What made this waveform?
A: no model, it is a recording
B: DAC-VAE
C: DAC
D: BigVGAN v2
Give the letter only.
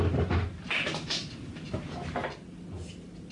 A